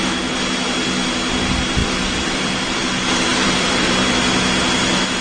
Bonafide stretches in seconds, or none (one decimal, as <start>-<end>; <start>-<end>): 0.0-1.8; 2.8-3.3; 4.1-5.2